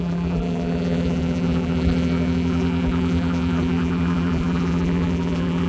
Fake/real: fake